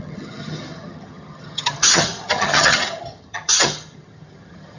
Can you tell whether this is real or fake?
fake